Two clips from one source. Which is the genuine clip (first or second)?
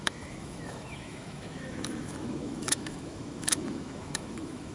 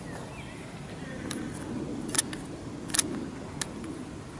second